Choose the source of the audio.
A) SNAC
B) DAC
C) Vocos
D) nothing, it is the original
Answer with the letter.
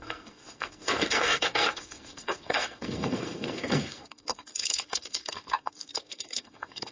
A